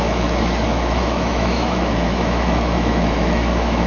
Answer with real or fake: fake